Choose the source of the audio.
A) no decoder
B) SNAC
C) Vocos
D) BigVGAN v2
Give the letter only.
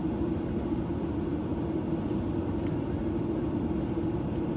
A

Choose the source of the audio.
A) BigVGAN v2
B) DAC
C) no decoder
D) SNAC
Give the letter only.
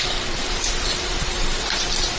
A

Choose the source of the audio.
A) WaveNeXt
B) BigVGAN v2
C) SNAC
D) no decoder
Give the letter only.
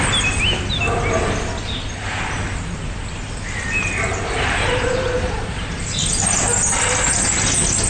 D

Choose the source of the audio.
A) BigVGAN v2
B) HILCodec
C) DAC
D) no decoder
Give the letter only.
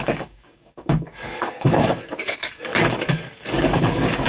C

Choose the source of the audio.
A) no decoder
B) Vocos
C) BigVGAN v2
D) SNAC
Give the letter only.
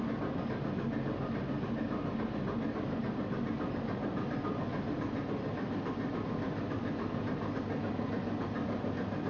A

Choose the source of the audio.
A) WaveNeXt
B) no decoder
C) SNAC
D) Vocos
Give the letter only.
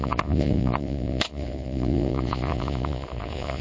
D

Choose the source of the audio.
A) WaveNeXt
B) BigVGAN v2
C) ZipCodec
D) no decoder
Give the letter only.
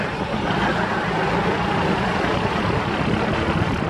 D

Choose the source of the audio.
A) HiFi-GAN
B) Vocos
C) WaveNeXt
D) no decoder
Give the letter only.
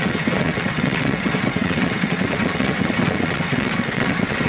C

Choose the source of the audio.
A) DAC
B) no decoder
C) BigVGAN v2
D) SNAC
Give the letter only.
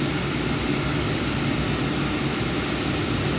B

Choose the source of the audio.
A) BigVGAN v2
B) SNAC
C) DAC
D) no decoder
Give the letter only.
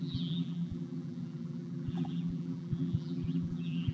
A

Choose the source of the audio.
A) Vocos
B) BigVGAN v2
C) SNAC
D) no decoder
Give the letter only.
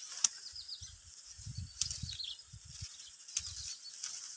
D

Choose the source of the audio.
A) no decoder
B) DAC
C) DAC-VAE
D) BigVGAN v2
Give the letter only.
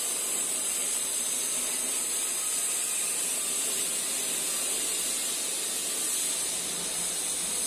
A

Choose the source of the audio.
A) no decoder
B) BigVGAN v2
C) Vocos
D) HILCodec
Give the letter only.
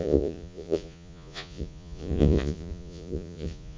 C